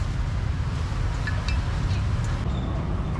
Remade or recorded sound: recorded